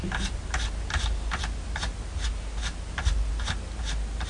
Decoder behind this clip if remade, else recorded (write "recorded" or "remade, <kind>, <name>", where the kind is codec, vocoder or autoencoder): recorded